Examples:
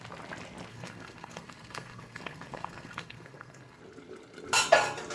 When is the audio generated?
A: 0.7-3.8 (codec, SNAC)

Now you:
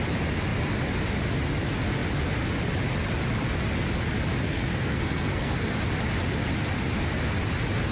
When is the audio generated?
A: 4.4-5.7 (codec, SNAC)

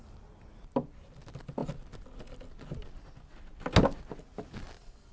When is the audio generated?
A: none

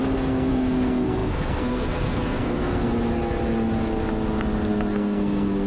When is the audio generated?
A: 0.0-2.9 (codec, SNAC); 4.7-5.7

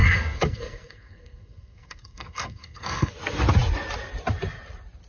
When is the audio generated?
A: 0.0-3.1 (codec, SNAC)

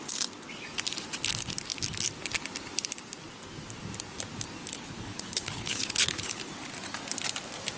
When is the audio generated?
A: 4.7-6.5 (codec, HILCodec)

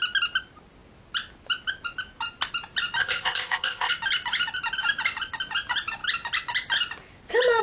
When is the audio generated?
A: 3.0-3.9 (codec, ZipCodec)